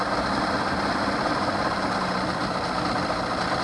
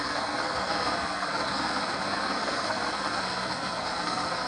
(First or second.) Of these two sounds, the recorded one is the first